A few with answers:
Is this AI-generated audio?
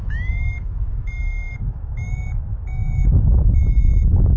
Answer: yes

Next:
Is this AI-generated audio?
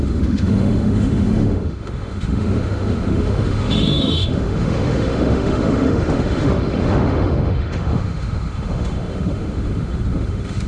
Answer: yes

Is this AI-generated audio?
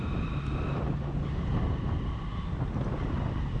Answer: no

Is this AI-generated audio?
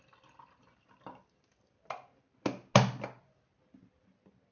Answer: no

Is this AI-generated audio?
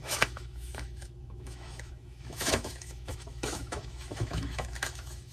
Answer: yes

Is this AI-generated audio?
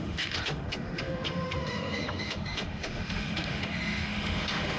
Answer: yes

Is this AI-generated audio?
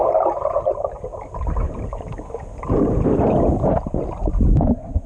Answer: no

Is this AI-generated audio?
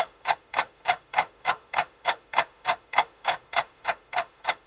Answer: yes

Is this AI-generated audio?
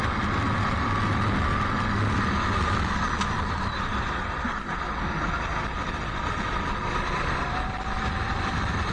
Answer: no